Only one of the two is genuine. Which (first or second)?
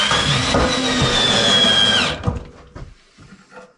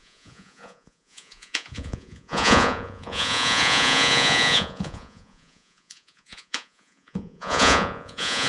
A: first